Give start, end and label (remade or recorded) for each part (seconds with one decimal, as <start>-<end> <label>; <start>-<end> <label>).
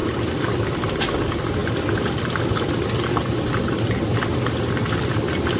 0.0-5.6 recorded